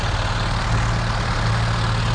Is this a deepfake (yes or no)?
no